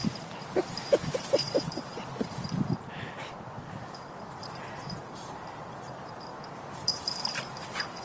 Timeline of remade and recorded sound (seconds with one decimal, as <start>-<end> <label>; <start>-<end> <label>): 0.0-2.1 remade; 2.1-6.3 recorded; 6.3-7.4 remade; 7.4-8.0 recorded